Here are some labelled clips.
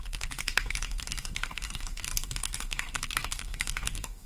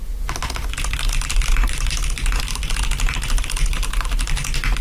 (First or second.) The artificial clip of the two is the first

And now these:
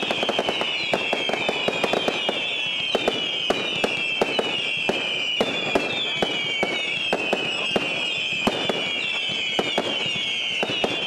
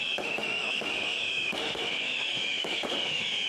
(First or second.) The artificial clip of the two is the second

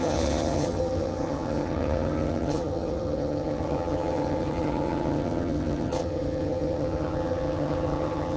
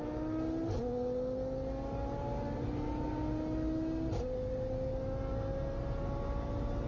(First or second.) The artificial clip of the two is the first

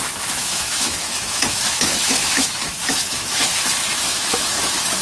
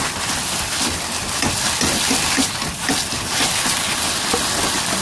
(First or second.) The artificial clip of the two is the first